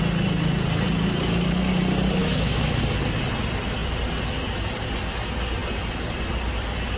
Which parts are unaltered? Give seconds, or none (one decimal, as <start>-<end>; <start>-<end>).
0.0-2.2; 2.8-7.0